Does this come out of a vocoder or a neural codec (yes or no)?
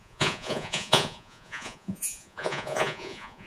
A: yes